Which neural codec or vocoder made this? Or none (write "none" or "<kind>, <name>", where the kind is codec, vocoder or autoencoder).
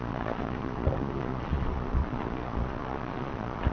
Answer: vocoder, Vocos